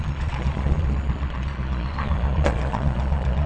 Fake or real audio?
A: fake